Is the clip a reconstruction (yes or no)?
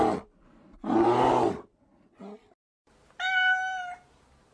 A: no